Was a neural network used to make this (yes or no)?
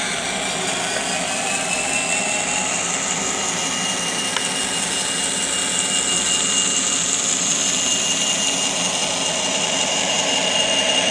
no